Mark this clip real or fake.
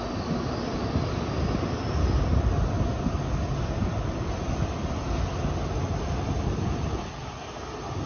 real